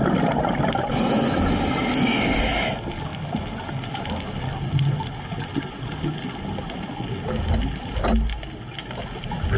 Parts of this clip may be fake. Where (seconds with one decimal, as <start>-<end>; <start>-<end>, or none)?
none